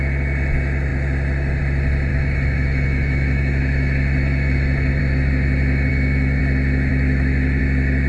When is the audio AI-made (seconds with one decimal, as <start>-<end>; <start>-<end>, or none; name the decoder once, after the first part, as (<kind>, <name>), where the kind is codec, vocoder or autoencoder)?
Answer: 2.1-5.0 (autoencoder, DAC-VAE); 5.9-6.4; 6.9-7.6